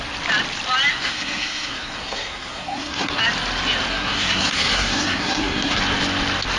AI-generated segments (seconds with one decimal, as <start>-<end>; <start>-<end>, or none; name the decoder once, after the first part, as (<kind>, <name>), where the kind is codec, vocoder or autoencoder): 0.9-3.2 (codec, SNAC); 3.9-5.8